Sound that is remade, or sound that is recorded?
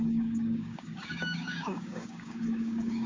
remade